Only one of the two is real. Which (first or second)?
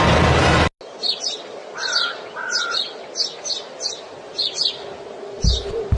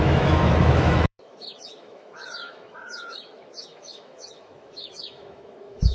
first